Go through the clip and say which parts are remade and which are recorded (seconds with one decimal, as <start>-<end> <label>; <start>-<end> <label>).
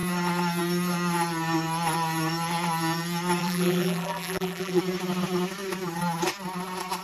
0.0-3.4 recorded; 3.4-4.8 remade; 4.8-7.0 recorded